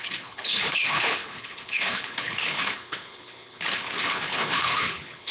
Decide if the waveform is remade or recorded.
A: remade